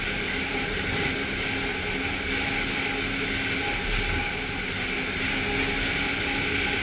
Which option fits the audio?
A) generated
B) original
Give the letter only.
B